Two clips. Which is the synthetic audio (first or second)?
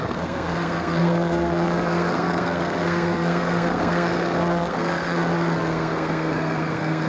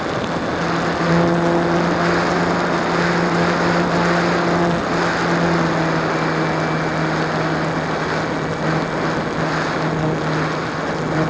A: first